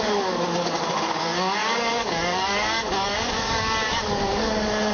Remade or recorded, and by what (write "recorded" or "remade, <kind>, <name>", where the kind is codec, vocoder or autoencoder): remade, codec, DAC